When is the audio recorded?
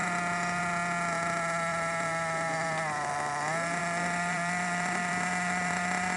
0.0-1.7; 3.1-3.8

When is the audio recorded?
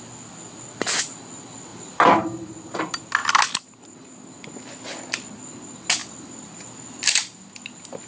0.0-1.7; 2.8-6.0; 7.5-8.1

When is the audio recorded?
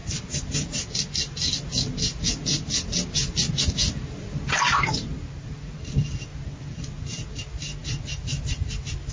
0.0-9.1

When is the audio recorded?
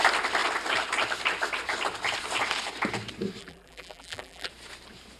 0.0-3.4; 4.5-5.2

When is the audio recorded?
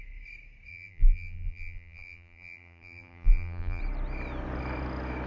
0.0-0.7; 3.8-5.3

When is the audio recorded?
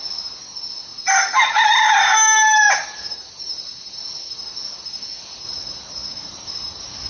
0.0-7.1